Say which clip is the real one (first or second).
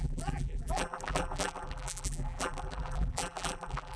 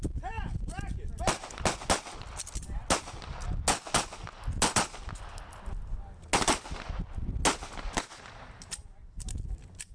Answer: second